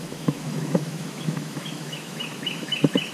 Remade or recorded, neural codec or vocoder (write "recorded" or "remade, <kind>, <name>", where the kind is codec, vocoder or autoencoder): remade, autoencoder, DAC-VAE